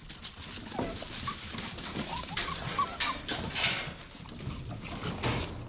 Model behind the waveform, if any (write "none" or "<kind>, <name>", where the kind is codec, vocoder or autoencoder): vocoder, BigVGAN v2